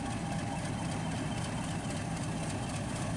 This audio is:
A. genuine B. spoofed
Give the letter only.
A